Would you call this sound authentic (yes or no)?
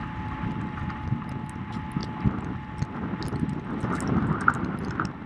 yes